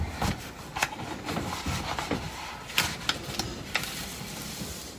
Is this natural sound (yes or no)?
no